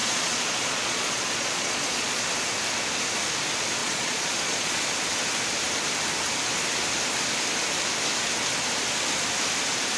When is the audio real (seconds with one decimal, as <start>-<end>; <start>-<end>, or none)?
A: 2.2-3.8; 4.8-10.0